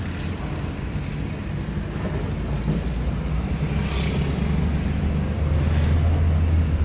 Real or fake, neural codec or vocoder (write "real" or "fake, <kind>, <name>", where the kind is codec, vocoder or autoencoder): real